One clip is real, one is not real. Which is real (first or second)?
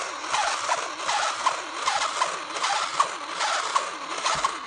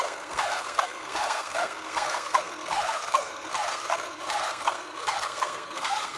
first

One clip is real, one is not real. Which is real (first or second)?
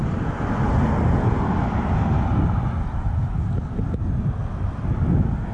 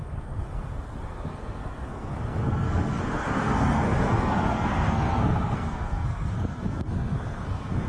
first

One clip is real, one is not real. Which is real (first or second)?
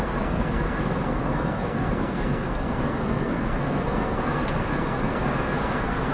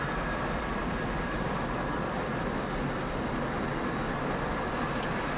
second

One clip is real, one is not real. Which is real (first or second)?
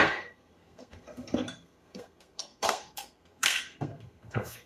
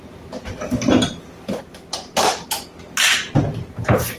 second